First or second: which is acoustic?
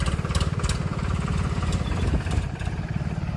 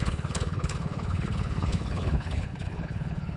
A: first